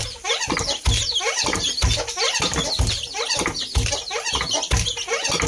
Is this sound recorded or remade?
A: recorded